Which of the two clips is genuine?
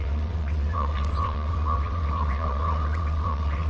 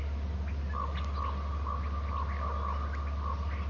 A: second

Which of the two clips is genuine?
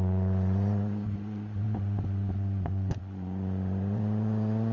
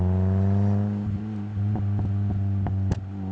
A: second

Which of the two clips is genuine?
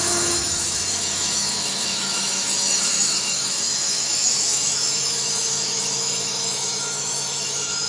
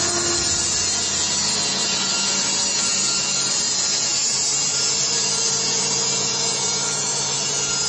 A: second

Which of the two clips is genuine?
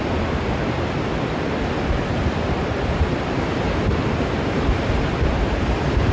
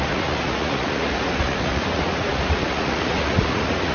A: first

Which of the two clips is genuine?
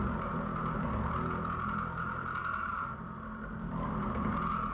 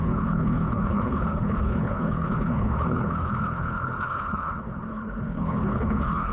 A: first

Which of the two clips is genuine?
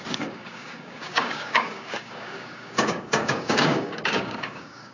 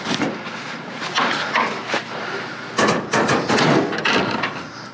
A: second